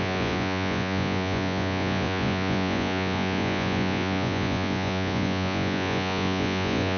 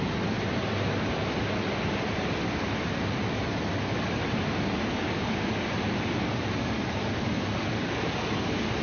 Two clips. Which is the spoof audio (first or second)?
first